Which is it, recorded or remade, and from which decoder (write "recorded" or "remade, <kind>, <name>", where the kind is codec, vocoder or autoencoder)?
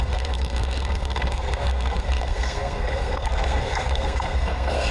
remade, codec, SNAC